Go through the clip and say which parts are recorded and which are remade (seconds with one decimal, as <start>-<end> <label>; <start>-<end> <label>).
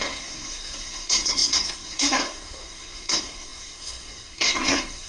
0.0-5.1 remade